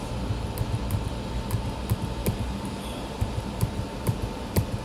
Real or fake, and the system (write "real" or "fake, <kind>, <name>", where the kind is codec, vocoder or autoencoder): real